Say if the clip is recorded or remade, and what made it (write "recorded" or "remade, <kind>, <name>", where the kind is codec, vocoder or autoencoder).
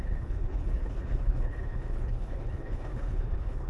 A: remade, codec, HILCodec